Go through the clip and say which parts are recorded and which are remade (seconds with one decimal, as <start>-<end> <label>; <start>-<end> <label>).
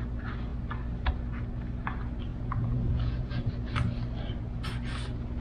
0.0-2.3 recorded; 2.3-3.5 remade; 3.5-5.4 recorded